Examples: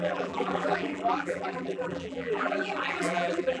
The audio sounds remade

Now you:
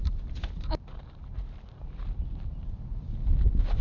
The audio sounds remade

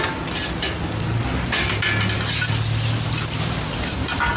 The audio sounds recorded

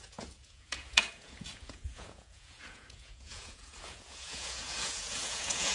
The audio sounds remade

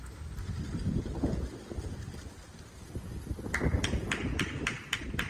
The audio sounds recorded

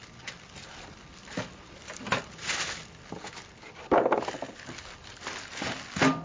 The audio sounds recorded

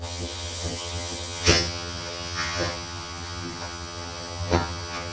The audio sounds remade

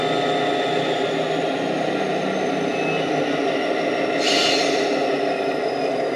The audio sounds recorded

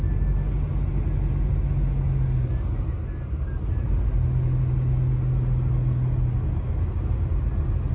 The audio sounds recorded